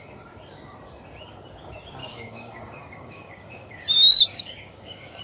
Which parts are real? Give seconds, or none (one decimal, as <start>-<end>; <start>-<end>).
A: 0.0-2.0